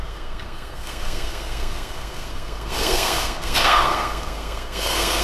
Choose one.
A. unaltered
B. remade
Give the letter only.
B